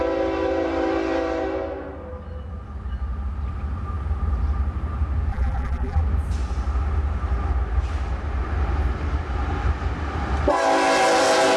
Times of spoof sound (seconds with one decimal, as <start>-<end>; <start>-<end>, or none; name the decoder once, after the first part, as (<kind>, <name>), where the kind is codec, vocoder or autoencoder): 5.3-6.0 (vocoder, BigVGAN v2)